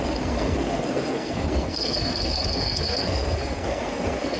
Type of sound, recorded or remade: remade